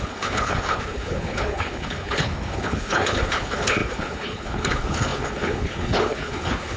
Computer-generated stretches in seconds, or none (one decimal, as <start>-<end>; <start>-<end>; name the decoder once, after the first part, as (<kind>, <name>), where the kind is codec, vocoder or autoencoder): 0.0-6.8 (codec, HILCodec)